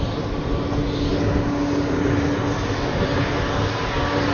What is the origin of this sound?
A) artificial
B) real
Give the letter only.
B